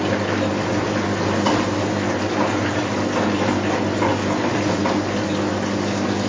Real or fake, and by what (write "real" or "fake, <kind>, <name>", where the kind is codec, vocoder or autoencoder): real